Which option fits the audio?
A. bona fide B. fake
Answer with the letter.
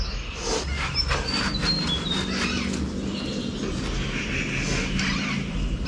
A